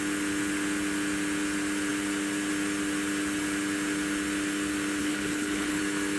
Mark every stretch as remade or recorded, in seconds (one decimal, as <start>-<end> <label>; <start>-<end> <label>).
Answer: 0.0-5.0 recorded; 5.0-5.8 remade; 5.8-6.2 recorded